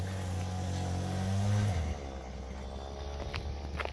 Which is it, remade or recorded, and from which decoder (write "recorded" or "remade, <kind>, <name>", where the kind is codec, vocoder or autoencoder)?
recorded